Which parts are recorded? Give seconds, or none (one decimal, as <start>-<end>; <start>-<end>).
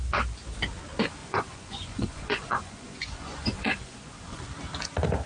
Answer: 0.0-1.2; 4.4-5.3